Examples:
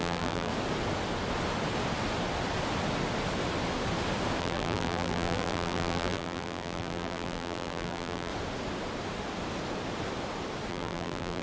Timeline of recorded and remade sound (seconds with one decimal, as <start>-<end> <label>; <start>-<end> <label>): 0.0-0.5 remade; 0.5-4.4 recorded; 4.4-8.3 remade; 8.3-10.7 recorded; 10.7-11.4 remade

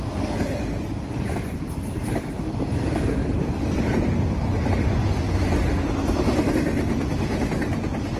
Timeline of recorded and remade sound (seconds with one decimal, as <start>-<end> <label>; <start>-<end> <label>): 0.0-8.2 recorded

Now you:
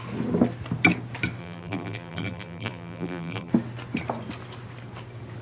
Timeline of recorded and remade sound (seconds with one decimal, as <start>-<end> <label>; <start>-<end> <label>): 0.0-1.4 recorded; 1.4-3.5 remade; 3.5-5.4 recorded

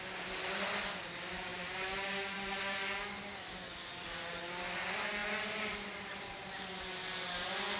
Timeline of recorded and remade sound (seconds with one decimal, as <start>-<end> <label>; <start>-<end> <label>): 0.0-1.5 recorded; 1.5-2.6 remade; 2.6-7.8 recorded

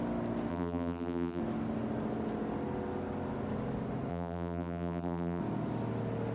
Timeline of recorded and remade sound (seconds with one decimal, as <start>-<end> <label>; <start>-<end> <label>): 0.0-0.5 recorded; 0.5-1.4 remade; 1.4-4.1 recorded; 4.1-5.4 remade; 5.4-6.3 recorded

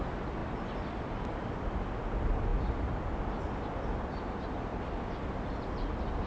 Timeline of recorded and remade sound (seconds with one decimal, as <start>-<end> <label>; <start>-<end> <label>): 0.0-6.3 recorded

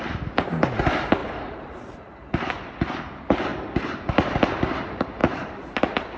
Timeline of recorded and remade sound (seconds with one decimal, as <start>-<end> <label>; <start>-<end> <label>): 0.0-1.2 recorded; 1.2-2.5 remade; 2.5-5.2 recorded; 5.2-5.8 remade; 5.8-6.2 recorded

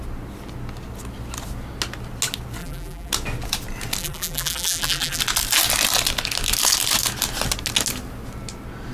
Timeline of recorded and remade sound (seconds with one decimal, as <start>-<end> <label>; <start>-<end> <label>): 0.0-2.6 recorded; 2.6-3.1 remade; 3.1-4.0 recorded; 4.0-5.2 remade; 5.2-8.9 recorded